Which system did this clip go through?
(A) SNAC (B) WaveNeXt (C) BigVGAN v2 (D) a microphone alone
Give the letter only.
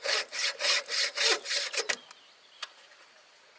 D